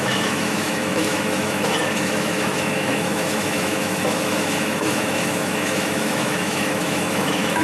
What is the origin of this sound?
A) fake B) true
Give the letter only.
A